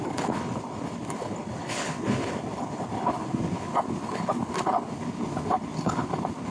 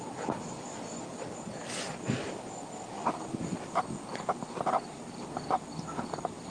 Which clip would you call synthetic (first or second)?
first